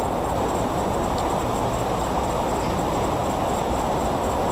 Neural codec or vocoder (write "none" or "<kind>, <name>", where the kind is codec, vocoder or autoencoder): none